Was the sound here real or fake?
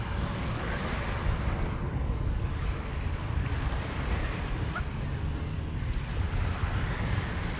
real